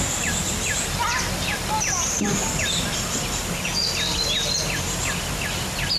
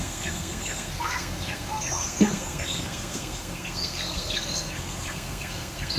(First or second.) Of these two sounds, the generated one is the second